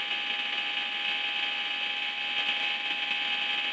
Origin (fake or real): real